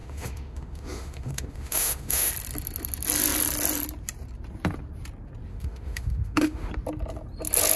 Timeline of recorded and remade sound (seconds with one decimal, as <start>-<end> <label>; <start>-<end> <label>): 0.0-2.3 remade; 2.3-5.5 recorded; 5.5-6.7 remade; 6.7-7.8 recorded